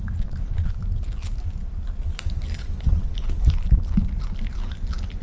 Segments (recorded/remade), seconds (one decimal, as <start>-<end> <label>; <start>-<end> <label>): 0.0-5.2 recorded